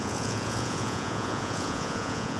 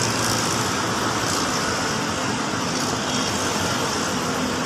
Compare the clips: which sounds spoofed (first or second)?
first